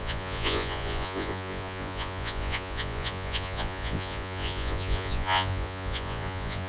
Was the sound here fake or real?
fake